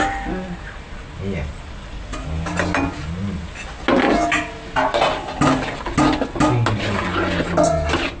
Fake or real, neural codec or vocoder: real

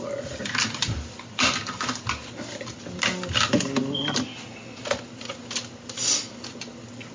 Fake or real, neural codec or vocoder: real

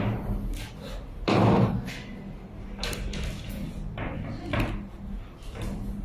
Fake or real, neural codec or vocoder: real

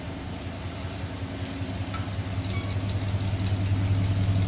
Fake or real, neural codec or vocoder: real